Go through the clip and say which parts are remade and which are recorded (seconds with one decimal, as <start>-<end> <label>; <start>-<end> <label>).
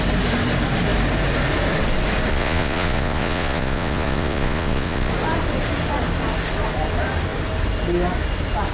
0.0-2.3 recorded; 2.3-5.1 remade; 5.1-8.7 recorded